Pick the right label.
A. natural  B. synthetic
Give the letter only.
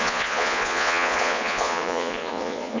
B